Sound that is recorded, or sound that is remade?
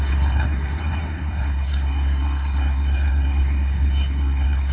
remade